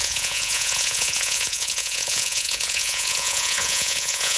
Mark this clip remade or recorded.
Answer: remade